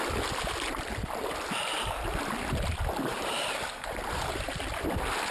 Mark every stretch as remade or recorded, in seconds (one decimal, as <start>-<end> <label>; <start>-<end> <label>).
0.0-3.1 recorded; 3.1-4.7 remade; 4.7-5.3 recorded